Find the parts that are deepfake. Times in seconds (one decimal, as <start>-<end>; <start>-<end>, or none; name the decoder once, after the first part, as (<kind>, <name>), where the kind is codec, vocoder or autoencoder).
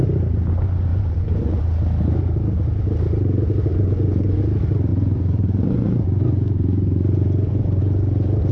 0.9-1.6 (vocoder, Vocos); 3.7-4.4; 4.9-7.8